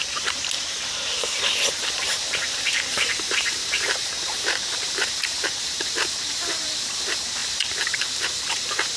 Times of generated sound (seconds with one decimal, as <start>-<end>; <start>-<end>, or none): 0.0-9.0